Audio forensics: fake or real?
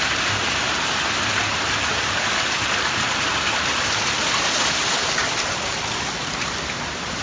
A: real